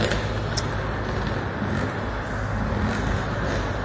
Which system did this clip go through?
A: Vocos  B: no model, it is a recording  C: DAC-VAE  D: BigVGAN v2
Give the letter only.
B